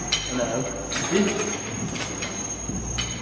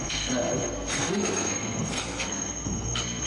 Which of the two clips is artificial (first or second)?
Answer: second